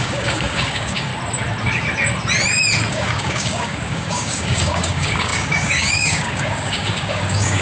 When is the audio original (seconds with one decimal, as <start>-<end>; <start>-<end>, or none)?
1.1-2.9